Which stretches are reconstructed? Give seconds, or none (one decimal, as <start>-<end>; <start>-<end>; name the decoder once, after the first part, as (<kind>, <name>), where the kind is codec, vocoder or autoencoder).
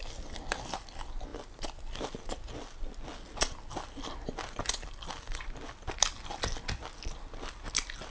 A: none